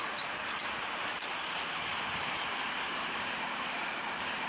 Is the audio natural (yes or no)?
no